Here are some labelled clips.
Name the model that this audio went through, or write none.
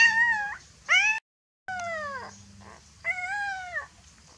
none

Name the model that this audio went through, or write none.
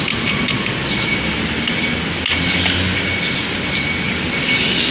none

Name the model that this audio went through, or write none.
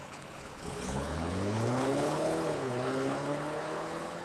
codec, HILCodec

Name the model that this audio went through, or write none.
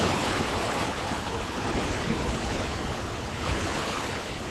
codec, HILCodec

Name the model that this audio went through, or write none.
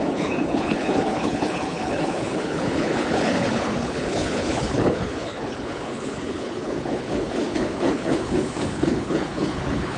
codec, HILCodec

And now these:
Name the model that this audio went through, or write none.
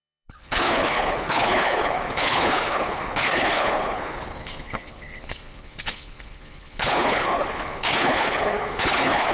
codec, HILCodec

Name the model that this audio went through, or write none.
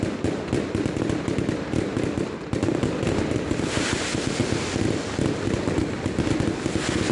none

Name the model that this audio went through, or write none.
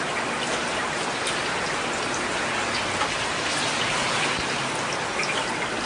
none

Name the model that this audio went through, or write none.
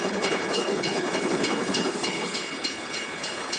codec, HILCodec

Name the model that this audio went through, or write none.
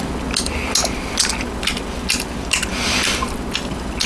none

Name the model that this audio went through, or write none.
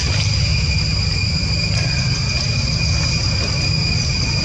none